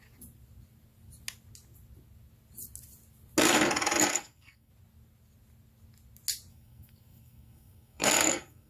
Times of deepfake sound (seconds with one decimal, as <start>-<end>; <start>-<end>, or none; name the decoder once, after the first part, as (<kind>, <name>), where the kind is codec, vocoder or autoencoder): 4.1-4.7 (codec, SNAC); 6.5-8.7